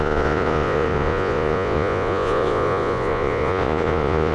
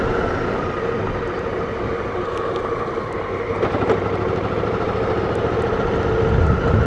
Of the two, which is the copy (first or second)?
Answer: first